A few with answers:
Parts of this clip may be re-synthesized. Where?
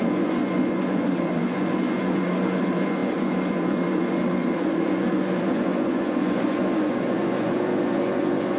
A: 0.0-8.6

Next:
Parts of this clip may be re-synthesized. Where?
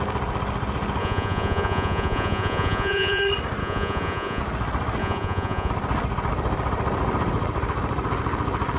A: 1.0-3.2; 3.6-4.4; 5.0-5.7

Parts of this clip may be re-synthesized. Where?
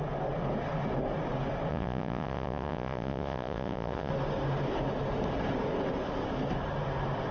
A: 1.7-4.1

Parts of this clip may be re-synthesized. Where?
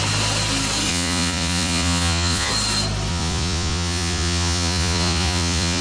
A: 0.9-2.5; 3.1-5.8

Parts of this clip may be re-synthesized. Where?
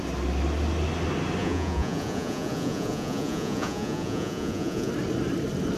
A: 1.4-4.9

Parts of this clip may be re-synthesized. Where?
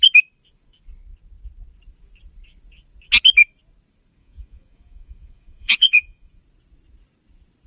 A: 4.2-6.4